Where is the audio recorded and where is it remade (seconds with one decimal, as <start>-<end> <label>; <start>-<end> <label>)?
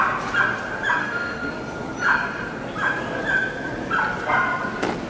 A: 0.0-1.0 recorded; 1.0-1.5 remade; 1.5-5.1 recorded